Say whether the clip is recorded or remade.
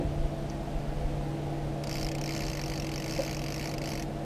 recorded